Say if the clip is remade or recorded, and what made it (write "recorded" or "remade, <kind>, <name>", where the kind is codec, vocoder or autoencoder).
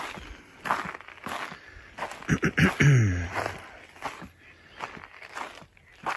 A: recorded